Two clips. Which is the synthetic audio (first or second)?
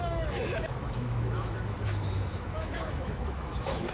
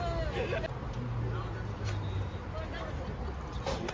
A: first